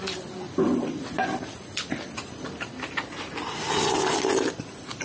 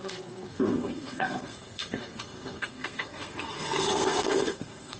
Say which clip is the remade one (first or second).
second